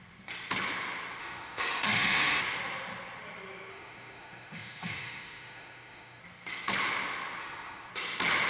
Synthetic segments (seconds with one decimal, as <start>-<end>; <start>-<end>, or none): 1.2-2.4; 3.7-6.2; 7.4-7.9